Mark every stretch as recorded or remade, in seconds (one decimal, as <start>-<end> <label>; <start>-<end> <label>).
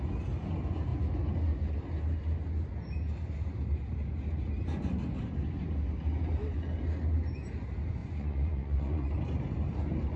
0.0-8.0 recorded; 8.0-9.2 remade; 9.2-10.2 recorded